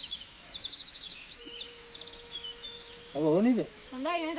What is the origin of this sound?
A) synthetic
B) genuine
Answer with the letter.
A